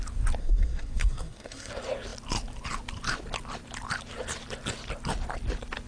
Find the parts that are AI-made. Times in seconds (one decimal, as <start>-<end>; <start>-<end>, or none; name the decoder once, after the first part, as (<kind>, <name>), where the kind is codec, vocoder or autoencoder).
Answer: 0.4-1.7 (codec, SNAC)